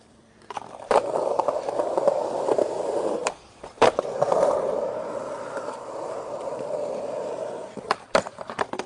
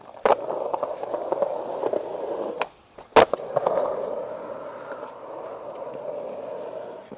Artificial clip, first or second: first